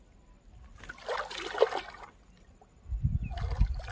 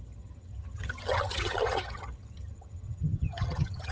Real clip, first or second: first